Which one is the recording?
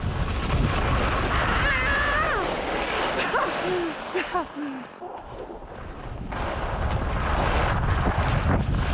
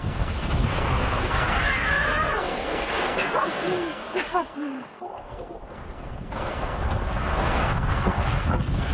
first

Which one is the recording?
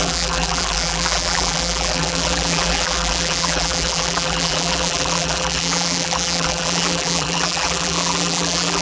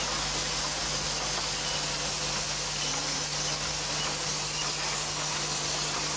second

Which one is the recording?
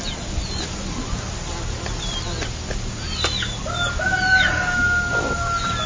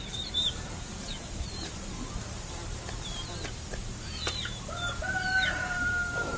first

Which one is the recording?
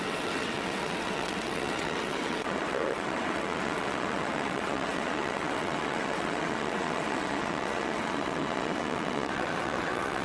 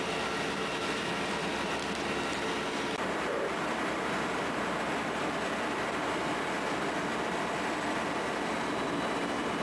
second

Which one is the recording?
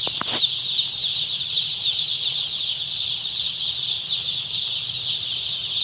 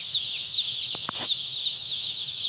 first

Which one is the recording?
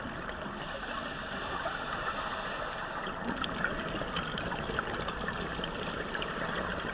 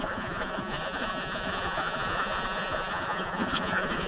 first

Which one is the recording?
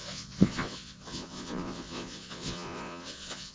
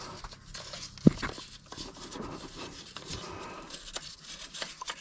second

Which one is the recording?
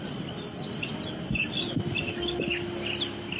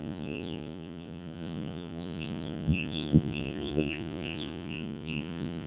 first